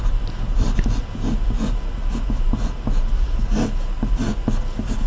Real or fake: real